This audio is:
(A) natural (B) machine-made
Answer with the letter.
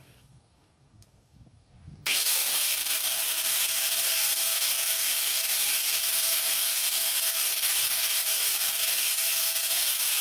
B